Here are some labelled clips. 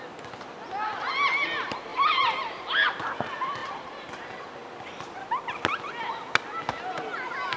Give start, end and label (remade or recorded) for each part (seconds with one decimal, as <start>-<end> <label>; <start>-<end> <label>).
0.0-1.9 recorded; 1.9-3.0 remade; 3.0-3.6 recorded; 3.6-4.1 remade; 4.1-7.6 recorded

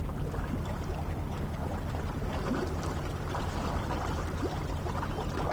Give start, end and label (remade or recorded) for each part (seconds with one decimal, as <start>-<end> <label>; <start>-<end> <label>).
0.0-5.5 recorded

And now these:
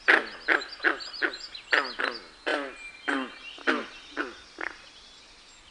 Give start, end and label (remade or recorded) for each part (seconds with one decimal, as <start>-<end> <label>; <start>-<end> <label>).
0.0-5.7 recorded

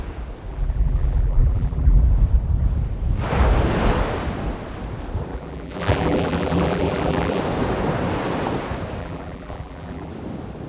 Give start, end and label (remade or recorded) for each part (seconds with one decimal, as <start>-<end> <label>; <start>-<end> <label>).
0.0-0.5 recorded; 0.5-2.0 remade; 2.0-5.3 recorded; 5.3-7.4 remade; 7.4-9.0 recorded; 9.0-10.1 remade; 10.1-10.7 recorded